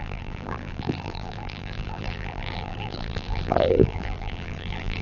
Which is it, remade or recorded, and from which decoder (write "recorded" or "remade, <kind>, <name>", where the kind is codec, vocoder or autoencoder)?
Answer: remade, vocoder, BigVGAN v2